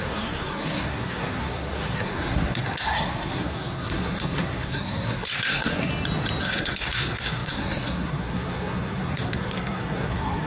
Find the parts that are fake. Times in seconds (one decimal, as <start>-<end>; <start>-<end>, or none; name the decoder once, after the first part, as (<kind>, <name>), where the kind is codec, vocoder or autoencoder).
0.0-5.9 (codec, SNAC); 6.4-10.5